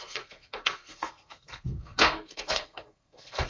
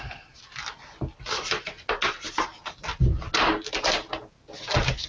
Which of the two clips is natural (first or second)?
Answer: second